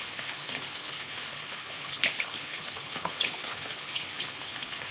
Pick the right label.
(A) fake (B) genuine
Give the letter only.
A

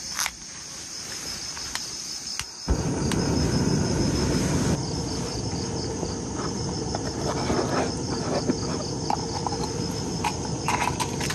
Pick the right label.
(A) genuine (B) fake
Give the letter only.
A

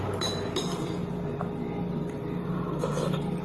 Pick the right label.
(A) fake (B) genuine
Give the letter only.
A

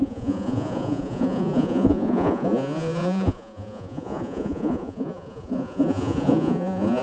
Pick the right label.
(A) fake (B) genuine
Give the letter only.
A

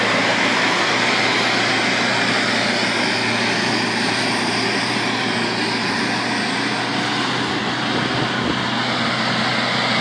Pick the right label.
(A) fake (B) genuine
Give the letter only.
B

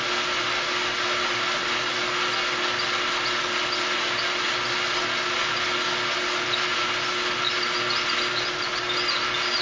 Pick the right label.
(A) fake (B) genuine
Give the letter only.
B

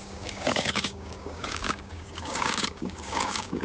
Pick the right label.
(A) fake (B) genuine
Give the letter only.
A